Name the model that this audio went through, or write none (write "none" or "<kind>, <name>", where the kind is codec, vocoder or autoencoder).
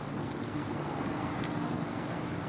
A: codec, SNAC